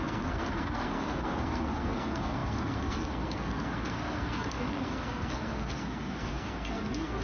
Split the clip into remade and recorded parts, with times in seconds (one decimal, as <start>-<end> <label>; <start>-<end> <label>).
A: 0.0-7.2 remade